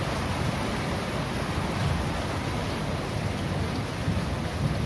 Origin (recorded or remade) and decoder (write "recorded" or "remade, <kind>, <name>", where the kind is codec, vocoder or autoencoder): recorded